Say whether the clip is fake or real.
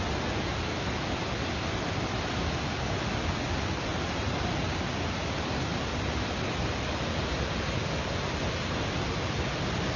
real